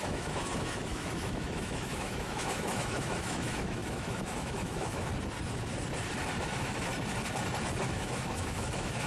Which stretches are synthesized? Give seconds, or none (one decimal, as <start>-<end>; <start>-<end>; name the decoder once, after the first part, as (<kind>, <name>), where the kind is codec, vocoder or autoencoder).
0.0-5.1 (autoencoder, DAC-VAE); 6.4-6.9; 7.8-9.1